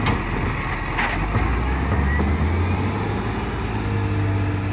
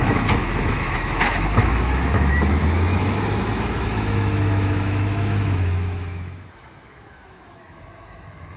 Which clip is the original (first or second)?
first